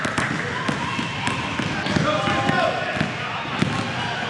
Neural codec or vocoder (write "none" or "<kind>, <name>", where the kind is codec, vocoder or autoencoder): none